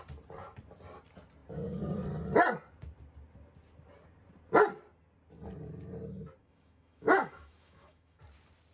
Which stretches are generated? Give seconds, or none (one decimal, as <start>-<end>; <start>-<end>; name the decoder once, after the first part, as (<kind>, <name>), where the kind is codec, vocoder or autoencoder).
6.4-8.2 (autoencoder, DAC-VAE)